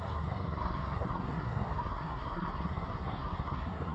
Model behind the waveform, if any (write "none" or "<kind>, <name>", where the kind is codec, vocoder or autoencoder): codec, SNAC